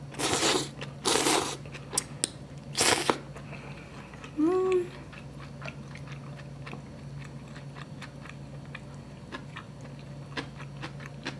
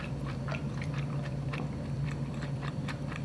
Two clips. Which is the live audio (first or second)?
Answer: first